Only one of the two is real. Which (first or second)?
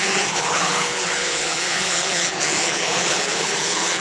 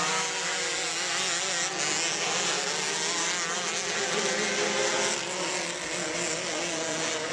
second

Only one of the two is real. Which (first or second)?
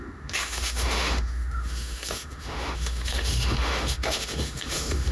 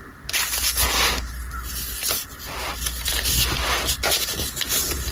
second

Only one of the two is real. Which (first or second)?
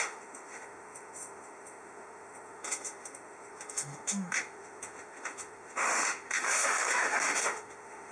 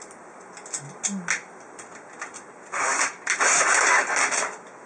second